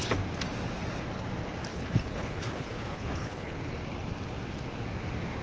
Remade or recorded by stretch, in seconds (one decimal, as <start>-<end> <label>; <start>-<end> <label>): 0.0-1.7 recorded; 1.7-3.6 remade; 3.6-5.4 recorded

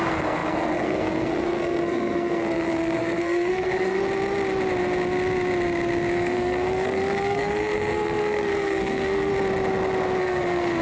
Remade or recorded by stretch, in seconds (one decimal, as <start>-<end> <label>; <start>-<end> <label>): 0.0-4.0 remade; 4.0-6.1 recorded; 6.1-9.3 remade; 9.3-10.2 recorded; 10.2-10.8 remade

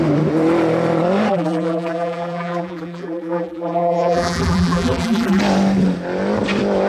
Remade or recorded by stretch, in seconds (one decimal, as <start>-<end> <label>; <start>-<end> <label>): 0.0-1.3 recorded; 1.3-5.4 remade; 5.4-6.9 recorded

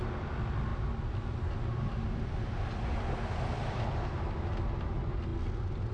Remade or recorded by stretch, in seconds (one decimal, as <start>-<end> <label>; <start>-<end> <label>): 0.0-5.9 recorded

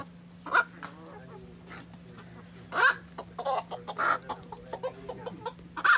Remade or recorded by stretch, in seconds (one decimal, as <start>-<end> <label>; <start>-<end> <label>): 0.0-6.0 recorded

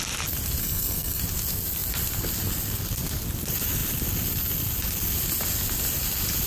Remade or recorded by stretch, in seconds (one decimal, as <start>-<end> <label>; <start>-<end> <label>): 0.0-0.6 recorded; 0.6-1.2 remade; 1.2-6.5 recorded

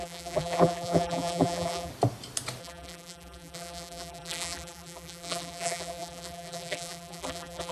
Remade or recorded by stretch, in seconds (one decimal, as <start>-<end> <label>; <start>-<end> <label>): 0.0-1.9 remade; 1.9-2.6 recorded; 2.6-7.7 remade